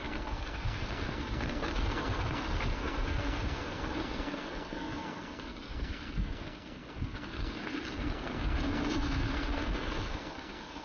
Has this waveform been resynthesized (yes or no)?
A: yes